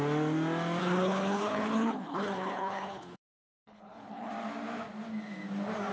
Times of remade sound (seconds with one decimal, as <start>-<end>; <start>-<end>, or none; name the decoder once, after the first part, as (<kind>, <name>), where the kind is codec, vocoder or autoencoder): 0.8-4.3 (codec, HILCodec)